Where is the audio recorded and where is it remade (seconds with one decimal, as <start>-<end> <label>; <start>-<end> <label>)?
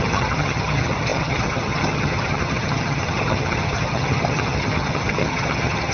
0.0-5.9 remade